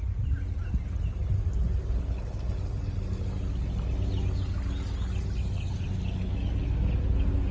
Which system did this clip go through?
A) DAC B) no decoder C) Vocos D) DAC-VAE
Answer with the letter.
B